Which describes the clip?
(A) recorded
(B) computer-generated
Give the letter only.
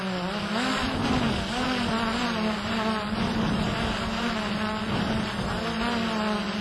A